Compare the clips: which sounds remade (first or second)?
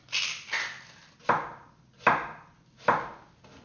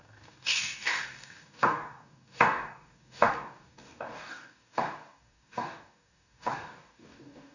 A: second